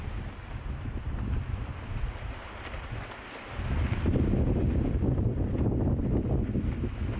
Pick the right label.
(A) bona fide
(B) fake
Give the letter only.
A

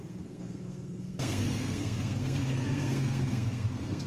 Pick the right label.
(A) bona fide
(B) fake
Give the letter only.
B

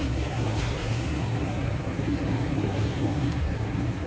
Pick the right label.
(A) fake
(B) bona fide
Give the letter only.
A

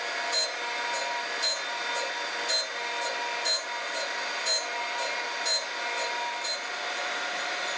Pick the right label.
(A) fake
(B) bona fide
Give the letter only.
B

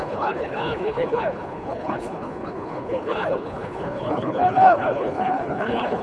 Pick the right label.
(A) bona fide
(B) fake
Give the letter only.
B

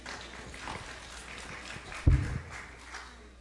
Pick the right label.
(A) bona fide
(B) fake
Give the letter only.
A